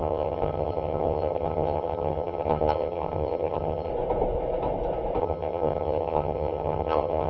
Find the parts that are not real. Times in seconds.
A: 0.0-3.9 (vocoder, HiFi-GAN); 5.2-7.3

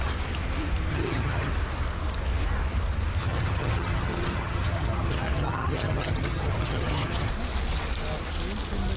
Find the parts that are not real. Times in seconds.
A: 0.9-1.5 (vocoder, HiFi-GAN); 3.2-7.3

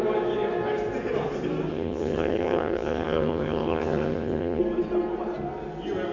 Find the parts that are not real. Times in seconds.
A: 1.7-4.6 (vocoder, HiFi-GAN)

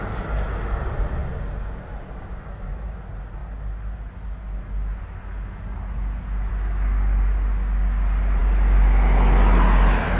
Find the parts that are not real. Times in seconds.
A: none

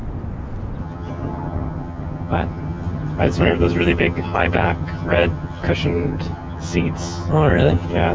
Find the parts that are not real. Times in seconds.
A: 0.8-8.1 (vocoder, HiFi-GAN)